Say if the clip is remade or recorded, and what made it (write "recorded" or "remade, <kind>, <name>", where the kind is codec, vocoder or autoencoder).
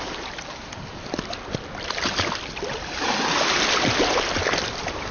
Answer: recorded